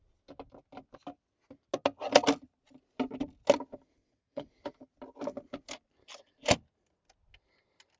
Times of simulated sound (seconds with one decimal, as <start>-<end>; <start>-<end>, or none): 4.0-4.5